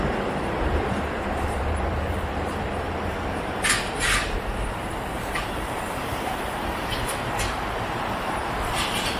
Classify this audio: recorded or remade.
remade